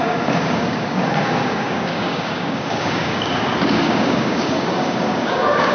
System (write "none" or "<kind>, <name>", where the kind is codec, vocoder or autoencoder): codec, DAC